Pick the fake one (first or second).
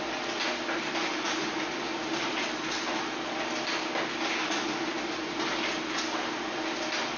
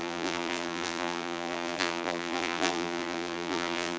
second